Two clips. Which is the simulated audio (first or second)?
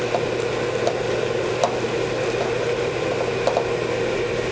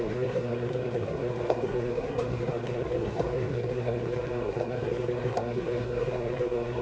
second